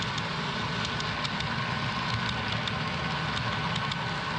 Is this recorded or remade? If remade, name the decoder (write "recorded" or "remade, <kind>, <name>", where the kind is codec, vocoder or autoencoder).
recorded